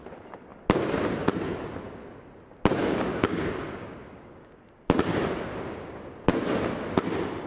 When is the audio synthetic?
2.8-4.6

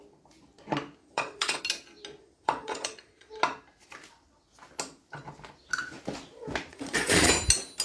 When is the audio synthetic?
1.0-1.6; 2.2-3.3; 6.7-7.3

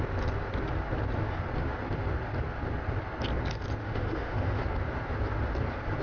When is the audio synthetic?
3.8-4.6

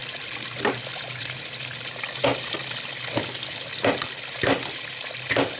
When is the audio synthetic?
none